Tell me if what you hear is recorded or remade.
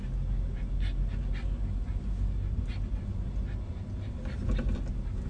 recorded